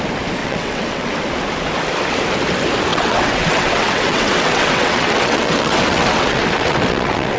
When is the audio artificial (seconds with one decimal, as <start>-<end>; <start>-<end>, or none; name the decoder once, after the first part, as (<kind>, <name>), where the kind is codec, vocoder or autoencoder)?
0.4-1.1 (vocoder, WaveNeXt); 2.9-7.4